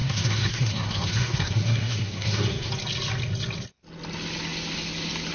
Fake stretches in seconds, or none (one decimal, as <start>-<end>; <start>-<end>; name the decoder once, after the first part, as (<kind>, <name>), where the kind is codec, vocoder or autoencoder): 0.0-2.7 (codec, SNAC)